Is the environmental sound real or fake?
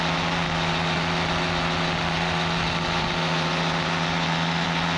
real